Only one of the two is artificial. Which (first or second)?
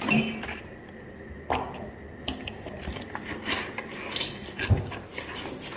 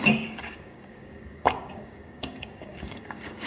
second